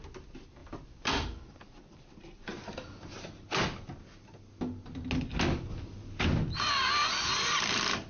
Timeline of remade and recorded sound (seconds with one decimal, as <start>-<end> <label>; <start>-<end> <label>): 0.0-0.6 recorded; 0.6-3.2 remade; 3.2-5.7 recorded; 5.7-6.2 remade; 6.2-7.0 recorded; 7.0-8.1 remade